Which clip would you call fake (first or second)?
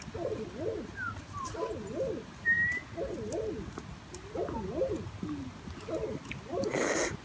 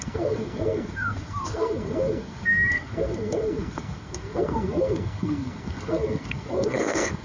second